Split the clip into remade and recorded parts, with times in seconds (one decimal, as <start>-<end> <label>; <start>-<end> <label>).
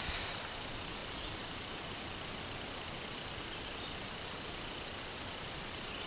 0.0-1.0 recorded; 1.0-1.7 remade; 1.7-6.1 recorded